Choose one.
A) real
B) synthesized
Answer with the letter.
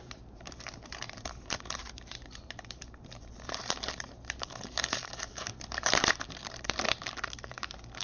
B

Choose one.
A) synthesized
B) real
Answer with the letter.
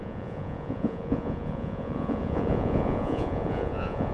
A